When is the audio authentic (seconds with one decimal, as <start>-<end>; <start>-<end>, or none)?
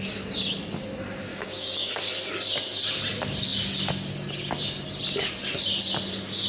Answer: 0.0-1.3; 1.9-6.5